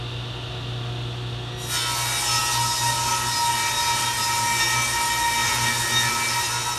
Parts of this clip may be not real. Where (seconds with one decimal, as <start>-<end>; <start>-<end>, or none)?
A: none